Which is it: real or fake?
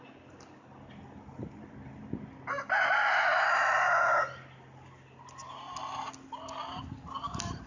real